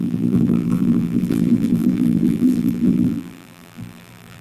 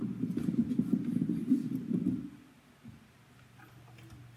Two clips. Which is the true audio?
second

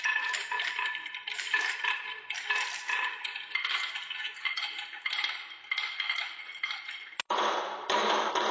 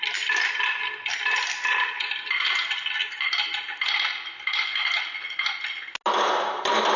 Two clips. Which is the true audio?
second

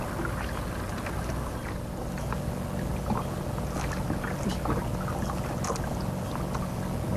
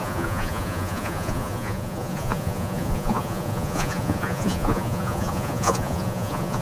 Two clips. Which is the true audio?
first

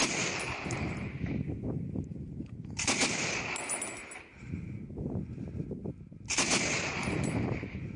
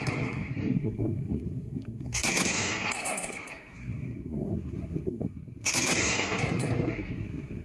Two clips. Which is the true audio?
first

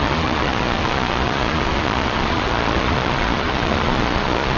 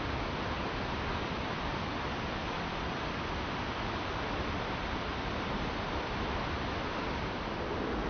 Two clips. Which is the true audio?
second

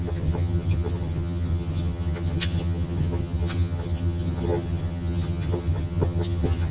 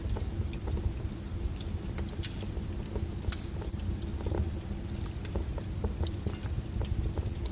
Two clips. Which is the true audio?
second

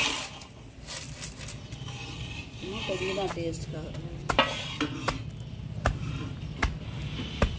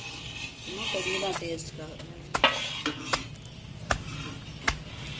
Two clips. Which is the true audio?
second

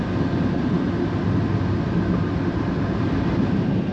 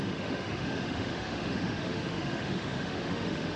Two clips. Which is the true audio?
first